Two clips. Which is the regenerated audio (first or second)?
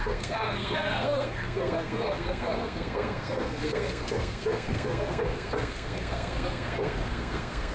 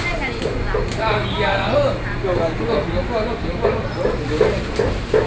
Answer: first